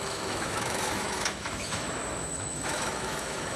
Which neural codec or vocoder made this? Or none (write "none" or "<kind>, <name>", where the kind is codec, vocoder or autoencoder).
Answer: autoencoder, DAC-VAE